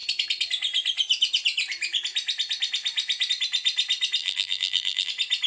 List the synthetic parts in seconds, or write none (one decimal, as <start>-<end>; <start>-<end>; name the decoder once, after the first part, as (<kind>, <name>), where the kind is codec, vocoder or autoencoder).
4.2-5.1 (vocoder, BigVGAN v2)